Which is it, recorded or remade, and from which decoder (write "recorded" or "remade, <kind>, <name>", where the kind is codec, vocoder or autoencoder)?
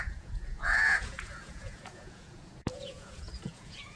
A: remade, vocoder, Vocos